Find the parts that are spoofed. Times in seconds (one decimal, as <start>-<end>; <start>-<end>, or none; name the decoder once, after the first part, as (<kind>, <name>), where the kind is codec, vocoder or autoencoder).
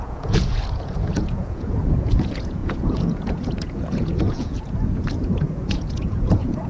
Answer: 0.0-6.7 (vocoder, Vocos)